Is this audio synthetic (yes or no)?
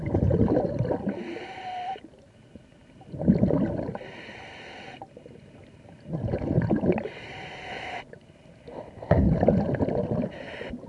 no